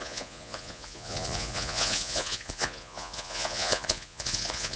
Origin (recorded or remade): remade